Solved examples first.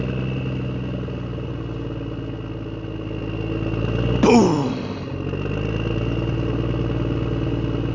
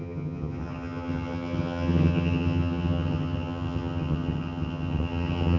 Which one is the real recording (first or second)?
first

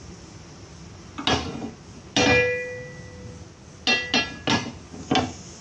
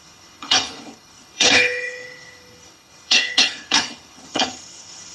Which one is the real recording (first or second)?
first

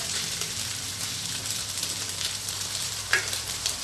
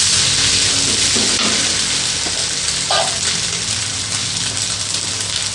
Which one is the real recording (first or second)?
second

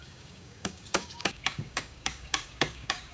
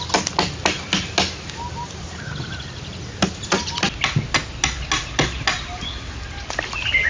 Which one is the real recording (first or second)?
second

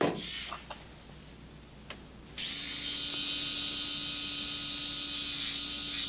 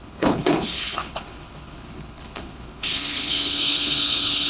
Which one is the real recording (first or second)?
first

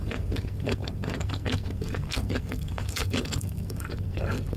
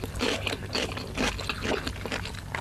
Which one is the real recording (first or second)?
second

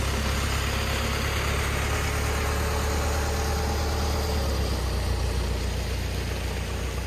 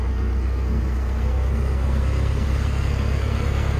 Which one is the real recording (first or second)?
first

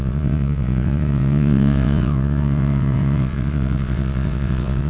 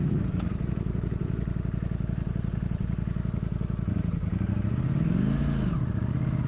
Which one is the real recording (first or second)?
second